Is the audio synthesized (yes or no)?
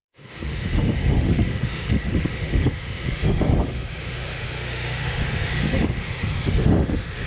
yes